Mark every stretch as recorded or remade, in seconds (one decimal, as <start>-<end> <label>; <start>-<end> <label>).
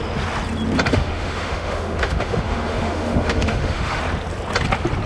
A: 0.0-0.9 recorded; 0.9-4.0 remade; 4.0-5.1 recorded